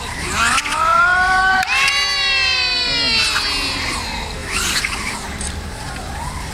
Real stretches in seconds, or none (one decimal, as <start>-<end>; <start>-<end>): 0.0-0.9; 1.9-4.4; 6.1-6.5